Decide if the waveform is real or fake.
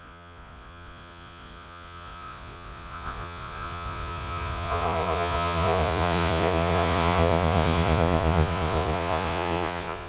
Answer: fake